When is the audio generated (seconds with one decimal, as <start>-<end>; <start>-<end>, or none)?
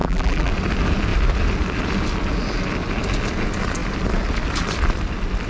0.0-0.5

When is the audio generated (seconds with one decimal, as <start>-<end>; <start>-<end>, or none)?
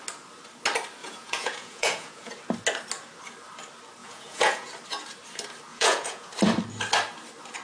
1.0-2.3; 4.0-4.7; 5.7-6.3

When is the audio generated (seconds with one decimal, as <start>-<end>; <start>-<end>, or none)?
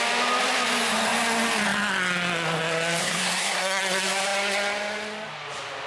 3.0-3.8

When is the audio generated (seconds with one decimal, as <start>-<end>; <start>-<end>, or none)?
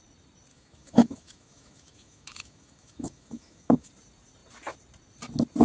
0.5-3.9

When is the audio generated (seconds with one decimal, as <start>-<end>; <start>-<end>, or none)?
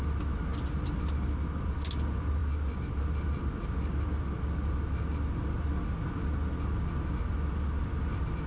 none